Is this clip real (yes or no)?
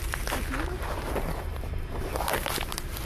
no